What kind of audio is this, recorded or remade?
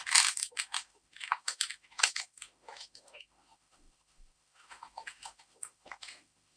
remade